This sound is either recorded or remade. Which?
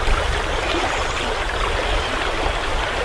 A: recorded